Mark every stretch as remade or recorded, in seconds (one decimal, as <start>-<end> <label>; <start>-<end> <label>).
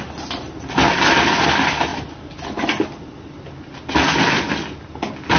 0.0-5.4 recorded